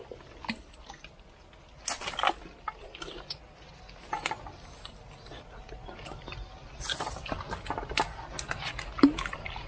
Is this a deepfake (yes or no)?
no